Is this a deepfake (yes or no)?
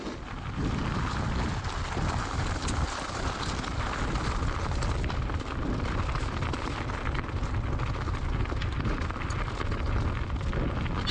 no